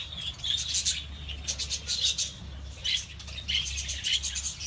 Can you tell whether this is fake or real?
real